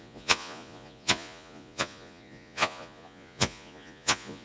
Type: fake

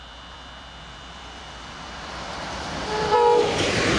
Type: fake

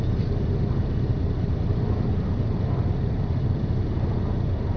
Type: fake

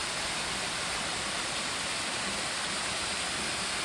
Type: real